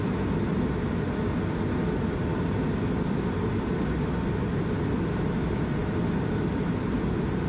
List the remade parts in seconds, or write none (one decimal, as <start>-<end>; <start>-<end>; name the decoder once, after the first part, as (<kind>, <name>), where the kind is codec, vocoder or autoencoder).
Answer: none